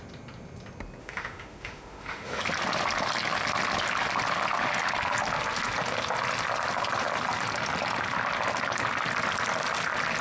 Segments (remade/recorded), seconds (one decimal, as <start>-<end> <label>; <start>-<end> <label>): 0.0-1.0 recorded; 1.0-2.4 remade; 2.4-10.2 recorded